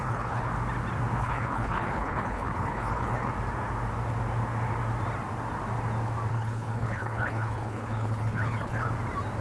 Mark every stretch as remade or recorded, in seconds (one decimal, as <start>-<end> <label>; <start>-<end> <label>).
0.0-0.5 remade; 0.5-1.2 recorded; 1.2-3.3 remade; 3.3-6.3 recorded; 6.3-8.9 remade; 8.9-9.4 recorded